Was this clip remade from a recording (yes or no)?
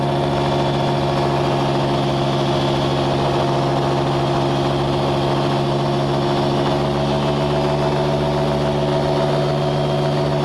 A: no